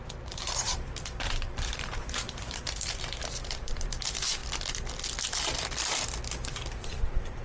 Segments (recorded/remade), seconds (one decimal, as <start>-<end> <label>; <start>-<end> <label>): 0.0-4.4 remade; 4.4-6.5 recorded; 6.5-7.4 remade